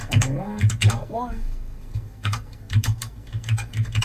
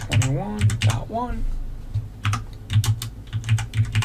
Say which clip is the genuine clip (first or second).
second